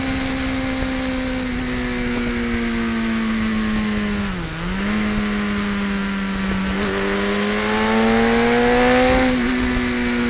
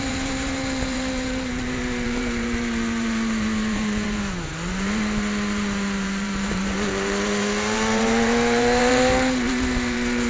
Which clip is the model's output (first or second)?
second